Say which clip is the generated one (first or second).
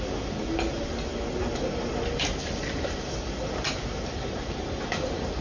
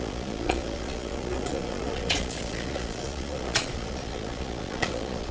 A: second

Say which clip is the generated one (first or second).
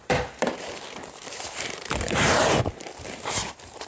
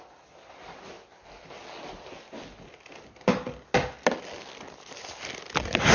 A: first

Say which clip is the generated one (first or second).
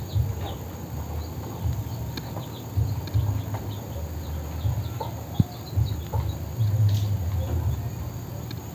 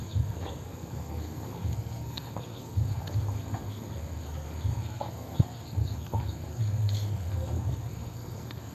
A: second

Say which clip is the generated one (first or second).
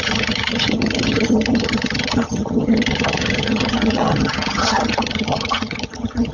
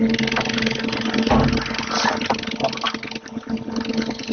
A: first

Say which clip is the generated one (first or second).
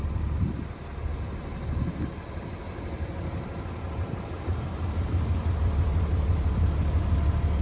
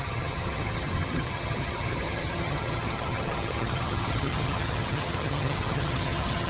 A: second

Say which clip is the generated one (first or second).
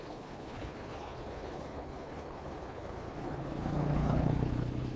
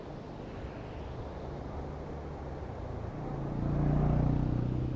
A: first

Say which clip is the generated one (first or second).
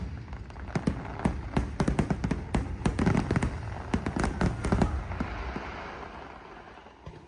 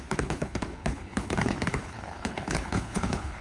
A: second